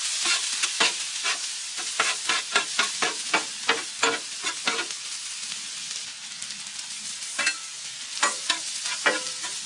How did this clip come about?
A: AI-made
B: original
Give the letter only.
B